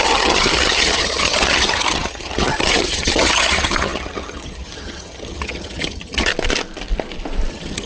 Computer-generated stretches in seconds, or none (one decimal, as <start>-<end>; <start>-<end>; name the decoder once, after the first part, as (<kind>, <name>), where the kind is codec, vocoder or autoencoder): 0.0-6.3 (vocoder, HiFi-GAN); 7.5-7.9